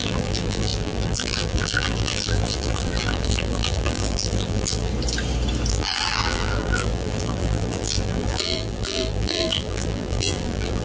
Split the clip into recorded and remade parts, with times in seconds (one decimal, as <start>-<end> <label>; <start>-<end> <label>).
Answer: 0.0-4.9 remade; 4.9-5.7 recorded; 5.7-10.8 remade